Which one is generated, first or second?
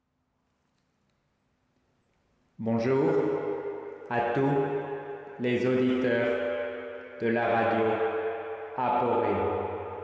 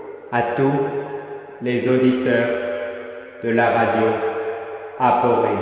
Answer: second